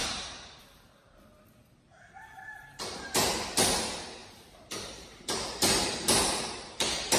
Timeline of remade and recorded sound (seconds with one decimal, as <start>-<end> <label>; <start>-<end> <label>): 0.0-0.6 remade; 0.6-1.9 recorded; 1.9-3.3 remade; 3.3-4.2 recorded; 4.2-7.2 remade